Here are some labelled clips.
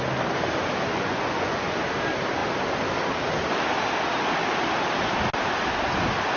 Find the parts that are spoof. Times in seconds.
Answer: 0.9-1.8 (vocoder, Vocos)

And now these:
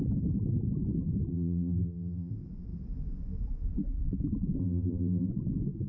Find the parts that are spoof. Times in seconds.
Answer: 1.3-2.3 (vocoder, BigVGAN v2); 4.6-5.3

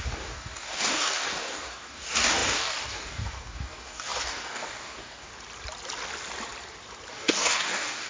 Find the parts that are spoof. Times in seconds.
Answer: 0.0-5.3 (codec, DAC); 7.1-8.1

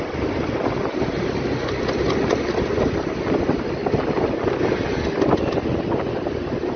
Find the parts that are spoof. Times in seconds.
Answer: none